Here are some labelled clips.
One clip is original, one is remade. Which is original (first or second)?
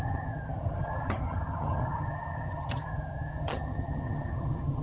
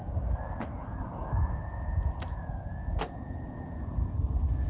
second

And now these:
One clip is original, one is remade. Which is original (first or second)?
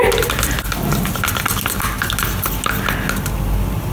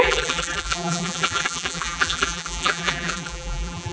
first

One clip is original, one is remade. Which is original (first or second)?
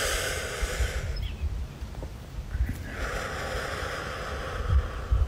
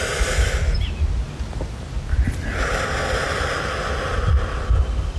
second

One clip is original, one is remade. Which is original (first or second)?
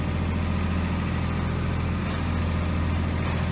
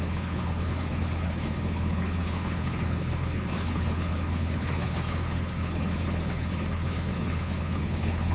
first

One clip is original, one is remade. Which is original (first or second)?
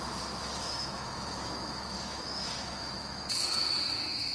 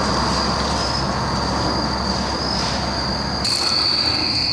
second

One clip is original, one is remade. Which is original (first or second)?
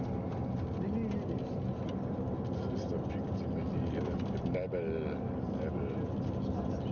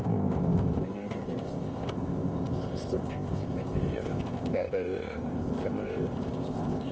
first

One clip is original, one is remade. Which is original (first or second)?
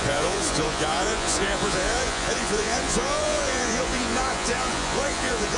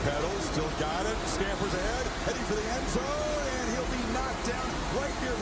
second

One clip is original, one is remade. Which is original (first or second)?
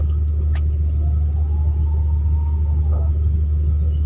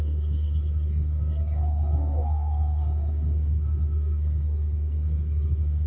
first